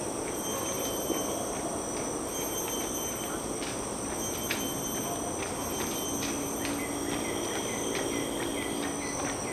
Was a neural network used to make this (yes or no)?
no